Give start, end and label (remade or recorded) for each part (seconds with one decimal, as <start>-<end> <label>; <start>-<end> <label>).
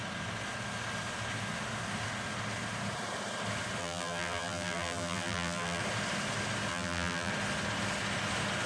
0.0-3.8 recorded; 3.8-5.8 remade; 5.8-6.7 recorded; 6.7-7.3 remade; 7.3-8.7 recorded